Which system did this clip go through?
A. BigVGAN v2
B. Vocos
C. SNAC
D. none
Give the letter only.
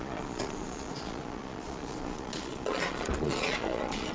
B